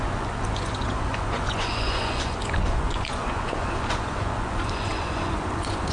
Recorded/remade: remade